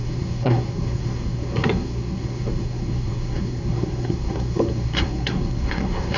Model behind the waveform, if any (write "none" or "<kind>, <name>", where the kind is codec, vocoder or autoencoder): codec, SNAC